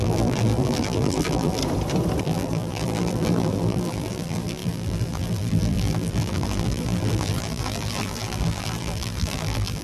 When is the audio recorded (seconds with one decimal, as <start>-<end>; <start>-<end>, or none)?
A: 1.6-2.2